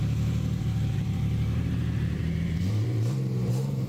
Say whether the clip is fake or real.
fake